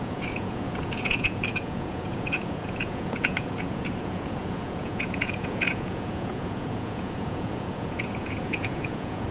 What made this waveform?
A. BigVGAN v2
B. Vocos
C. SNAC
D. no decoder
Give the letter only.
B